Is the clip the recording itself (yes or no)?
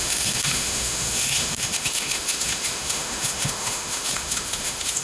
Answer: no